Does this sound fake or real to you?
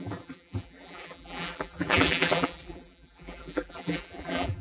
fake